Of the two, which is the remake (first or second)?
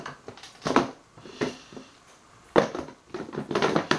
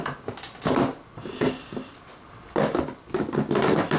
first